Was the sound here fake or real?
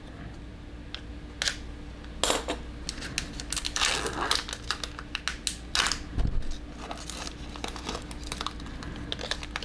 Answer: real